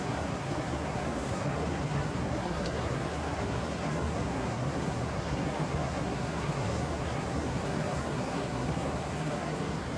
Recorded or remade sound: remade